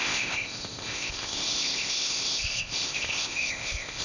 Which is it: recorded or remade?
remade